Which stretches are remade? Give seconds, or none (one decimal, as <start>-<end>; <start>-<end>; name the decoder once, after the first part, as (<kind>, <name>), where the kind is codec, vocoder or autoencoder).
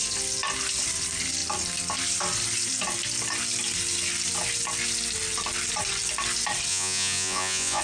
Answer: 6.7-7.8 (vocoder, Vocos)